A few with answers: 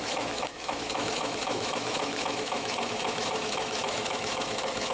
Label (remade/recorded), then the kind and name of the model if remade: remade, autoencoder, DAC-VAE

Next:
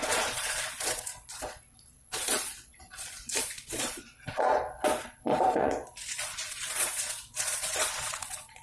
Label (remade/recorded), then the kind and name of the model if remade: remade, vocoder, Vocos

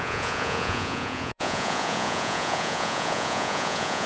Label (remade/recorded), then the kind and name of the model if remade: remade, vocoder, Vocos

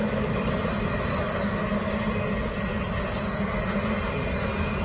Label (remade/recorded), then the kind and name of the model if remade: recorded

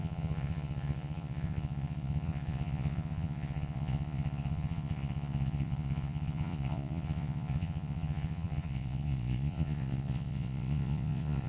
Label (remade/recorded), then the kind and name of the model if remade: remade, vocoder, Vocos